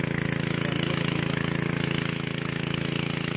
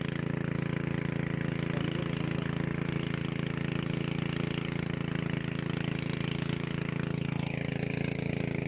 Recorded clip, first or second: second